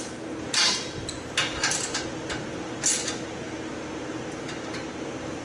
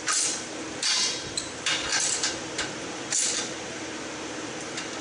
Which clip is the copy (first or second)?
second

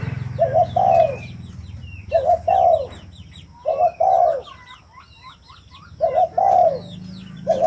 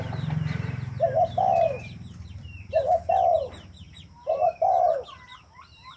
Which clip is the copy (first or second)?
second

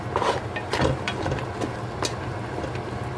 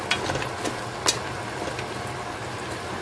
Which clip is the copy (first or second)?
first